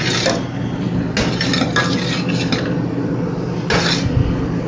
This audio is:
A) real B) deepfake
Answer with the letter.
A